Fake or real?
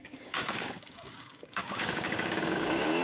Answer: fake